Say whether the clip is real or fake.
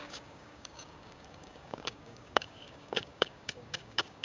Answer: fake